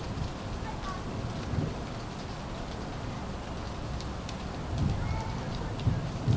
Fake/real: real